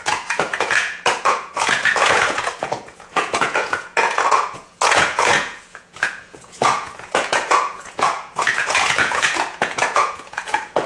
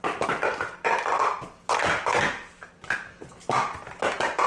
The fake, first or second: first